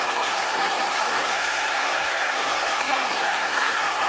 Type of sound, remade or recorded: remade